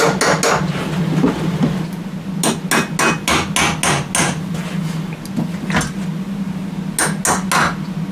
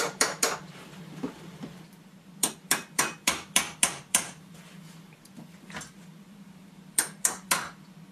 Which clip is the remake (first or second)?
second